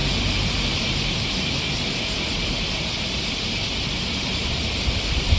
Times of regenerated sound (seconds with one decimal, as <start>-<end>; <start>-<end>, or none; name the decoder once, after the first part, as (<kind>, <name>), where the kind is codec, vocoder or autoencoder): none